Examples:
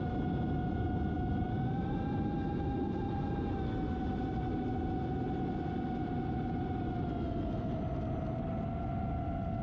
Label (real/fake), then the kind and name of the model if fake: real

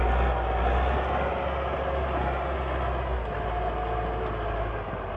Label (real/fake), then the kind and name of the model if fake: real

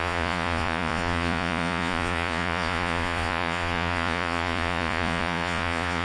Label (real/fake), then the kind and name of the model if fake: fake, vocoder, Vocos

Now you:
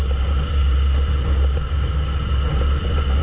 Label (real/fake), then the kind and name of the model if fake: real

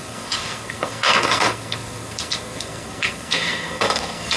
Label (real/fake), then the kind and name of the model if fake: fake, codec, SNAC